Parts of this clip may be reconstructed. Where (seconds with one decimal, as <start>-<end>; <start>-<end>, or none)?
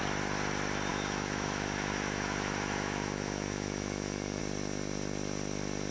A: 0.9-4.4